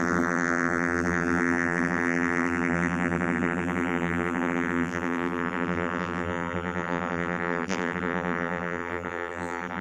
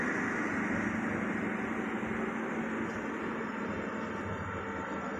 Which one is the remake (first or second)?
first